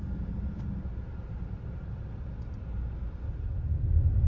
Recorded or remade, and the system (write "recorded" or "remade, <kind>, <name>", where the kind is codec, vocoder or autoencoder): recorded